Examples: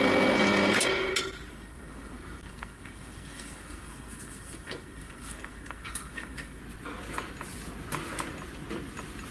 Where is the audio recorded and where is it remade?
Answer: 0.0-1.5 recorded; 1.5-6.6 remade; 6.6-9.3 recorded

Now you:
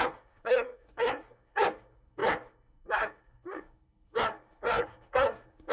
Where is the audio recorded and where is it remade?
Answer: 0.0-5.7 remade

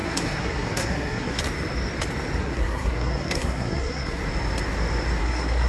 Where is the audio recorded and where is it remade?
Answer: 0.0-1.4 remade; 1.4-2.4 recorded; 2.4-4.2 remade; 4.2-5.2 recorded; 5.2-5.7 remade

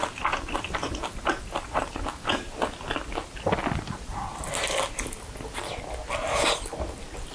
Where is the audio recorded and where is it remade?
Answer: 0.0-7.3 recorded

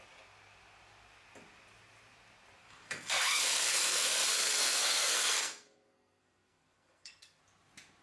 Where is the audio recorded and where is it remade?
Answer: 0.0-2.6 recorded; 2.6-7.4 remade; 7.4-8.0 recorded

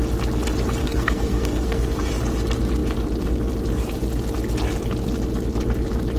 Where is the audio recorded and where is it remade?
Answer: 0.0-0.8 recorded; 0.8-1.9 remade; 1.9-6.2 recorded

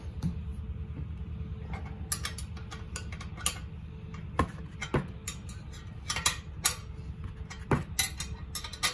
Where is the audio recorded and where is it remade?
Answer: 0.0-8.9 recorded

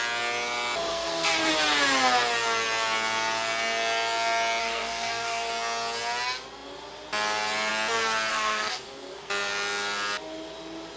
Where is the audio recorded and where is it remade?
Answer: 0.0-0.9 recorded; 0.9-1.5 remade; 1.5-4.6 recorded; 4.6-5.5 remade; 5.5-8.3 recorded; 8.3-9.3 remade; 9.3-11.0 recorded